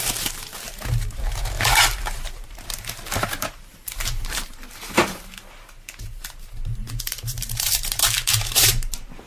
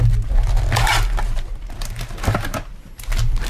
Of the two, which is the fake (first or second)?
first